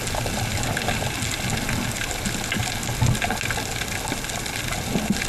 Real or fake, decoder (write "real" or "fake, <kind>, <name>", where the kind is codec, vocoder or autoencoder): real